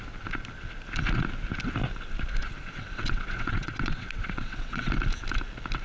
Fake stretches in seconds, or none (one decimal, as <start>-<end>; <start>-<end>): 2.4-4.9